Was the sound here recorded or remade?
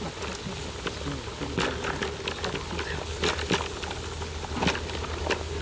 recorded